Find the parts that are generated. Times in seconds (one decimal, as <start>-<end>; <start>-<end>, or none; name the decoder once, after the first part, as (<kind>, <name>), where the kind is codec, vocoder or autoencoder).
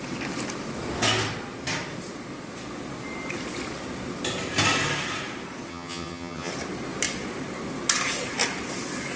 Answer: 5.7-6.5 (vocoder, HiFi-GAN)